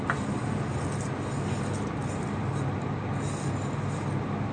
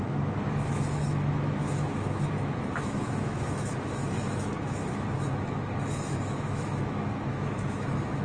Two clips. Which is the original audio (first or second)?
first